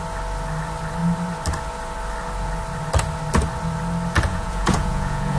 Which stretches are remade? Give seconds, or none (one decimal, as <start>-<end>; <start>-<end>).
4.3-5.4